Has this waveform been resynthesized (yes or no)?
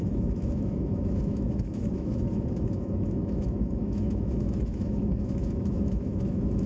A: yes